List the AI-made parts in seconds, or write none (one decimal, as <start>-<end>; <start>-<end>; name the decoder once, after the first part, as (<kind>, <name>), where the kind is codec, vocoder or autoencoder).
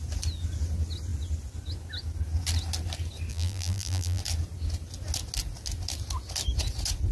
3.3-4.2 (vocoder, BigVGAN v2)